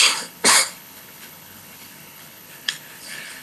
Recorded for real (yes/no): no